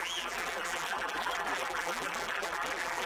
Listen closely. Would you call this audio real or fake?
fake